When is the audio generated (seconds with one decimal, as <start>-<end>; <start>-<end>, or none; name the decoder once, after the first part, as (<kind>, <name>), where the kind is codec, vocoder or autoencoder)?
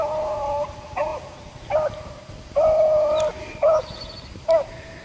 none